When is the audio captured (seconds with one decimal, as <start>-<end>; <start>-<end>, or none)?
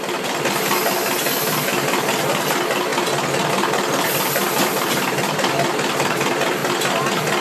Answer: 2.9-3.5; 6.6-7.4